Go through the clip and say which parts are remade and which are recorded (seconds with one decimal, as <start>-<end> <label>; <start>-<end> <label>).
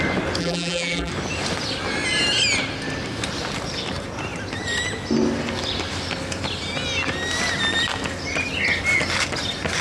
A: 0.0-0.4 recorded; 0.4-1.1 remade; 1.1-9.8 recorded